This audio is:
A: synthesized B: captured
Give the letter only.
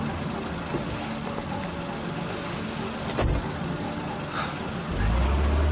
B